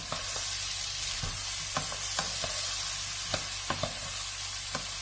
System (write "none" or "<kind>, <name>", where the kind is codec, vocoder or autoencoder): none